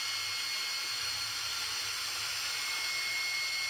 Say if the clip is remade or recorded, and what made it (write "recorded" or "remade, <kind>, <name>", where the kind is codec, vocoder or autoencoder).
recorded